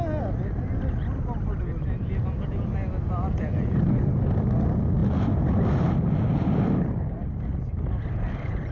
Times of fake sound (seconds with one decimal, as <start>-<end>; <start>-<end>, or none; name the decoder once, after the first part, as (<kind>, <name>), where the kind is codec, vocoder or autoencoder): none